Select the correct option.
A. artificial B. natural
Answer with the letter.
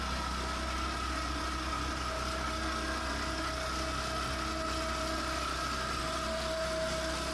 B